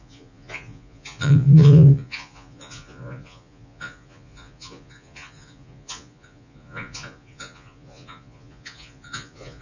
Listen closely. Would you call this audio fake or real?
fake